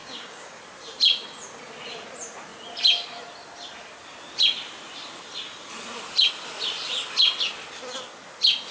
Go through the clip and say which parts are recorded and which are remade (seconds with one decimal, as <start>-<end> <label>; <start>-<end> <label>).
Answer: 0.0-0.6 remade; 0.6-8.7 recorded